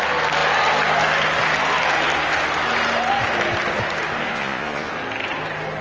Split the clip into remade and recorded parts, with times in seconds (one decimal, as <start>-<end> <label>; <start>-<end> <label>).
0.0-4.3 recorded; 4.3-4.9 remade; 4.9-5.8 recorded